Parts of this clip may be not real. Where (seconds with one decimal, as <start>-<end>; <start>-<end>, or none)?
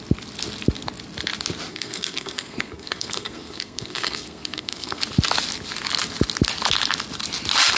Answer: 1.7-5.0